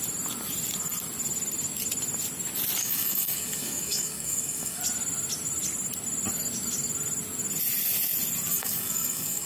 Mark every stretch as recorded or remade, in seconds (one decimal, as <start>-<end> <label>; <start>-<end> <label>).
0.0-2.8 recorded; 2.8-4.8 remade; 4.8-8.5 recorded; 8.5-9.5 remade